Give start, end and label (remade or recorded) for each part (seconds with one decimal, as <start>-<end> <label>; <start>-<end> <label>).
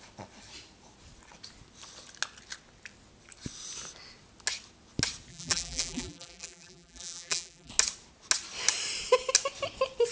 0.0-5.3 recorded; 5.3-7.7 remade; 7.7-10.1 recorded